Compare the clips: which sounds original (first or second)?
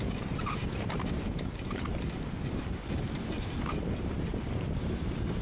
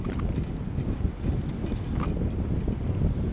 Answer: second